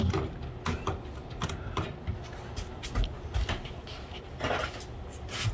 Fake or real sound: real